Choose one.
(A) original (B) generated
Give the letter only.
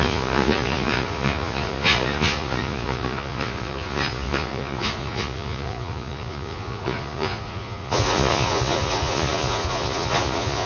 B